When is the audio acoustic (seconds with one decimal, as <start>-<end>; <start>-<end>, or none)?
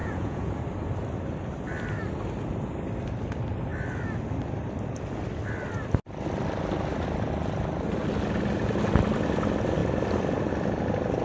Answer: 0.5-11.2